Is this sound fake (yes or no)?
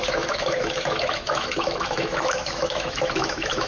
yes